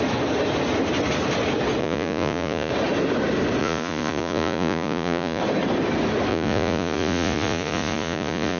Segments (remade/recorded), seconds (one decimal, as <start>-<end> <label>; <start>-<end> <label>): 0.0-1.8 recorded; 1.8-2.7 remade; 2.7-3.6 recorded; 3.6-5.4 remade; 5.4-6.3 recorded; 6.3-8.6 remade